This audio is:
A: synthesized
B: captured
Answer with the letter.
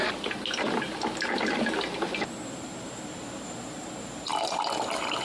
B